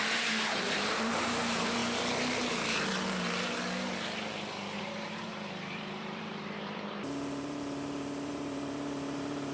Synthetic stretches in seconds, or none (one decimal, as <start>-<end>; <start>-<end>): 0.0-1.8; 4.8-9.5